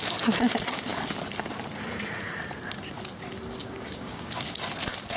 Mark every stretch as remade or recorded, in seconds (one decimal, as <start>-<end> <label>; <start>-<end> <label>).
0.0-3.6 recorded; 3.6-4.3 remade; 4.3-5.2 recorded